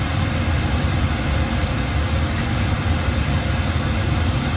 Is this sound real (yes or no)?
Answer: yes